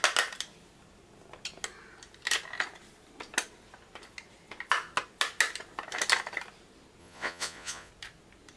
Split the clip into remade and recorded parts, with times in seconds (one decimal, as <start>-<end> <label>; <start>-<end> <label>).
0.0-7.0 recorded; 7.0-7.9 remade; 7.9-8.6 recorded